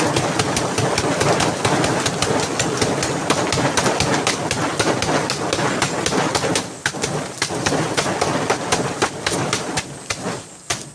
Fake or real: real